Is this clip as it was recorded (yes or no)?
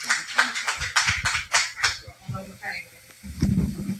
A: yes